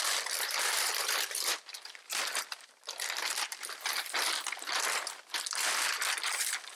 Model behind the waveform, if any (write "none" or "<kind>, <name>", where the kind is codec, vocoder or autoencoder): vocoder, BigVGAN v2